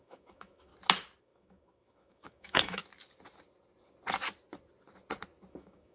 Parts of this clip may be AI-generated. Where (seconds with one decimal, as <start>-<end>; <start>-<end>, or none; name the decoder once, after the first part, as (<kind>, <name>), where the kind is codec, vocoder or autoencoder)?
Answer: 0.0-0.7 (autoencoder, DAC-VAE); 1.2-2.8; 5.5-5.9